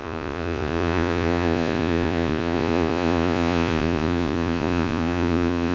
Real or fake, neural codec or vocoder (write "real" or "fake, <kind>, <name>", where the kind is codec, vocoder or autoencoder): fake, vocoder, Vocos